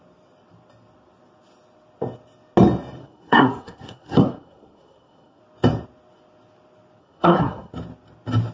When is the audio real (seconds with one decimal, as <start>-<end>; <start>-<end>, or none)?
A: 0.0-3.0; 5.4-7.0; 7.7-8.5